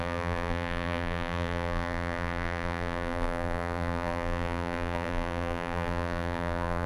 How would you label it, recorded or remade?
remade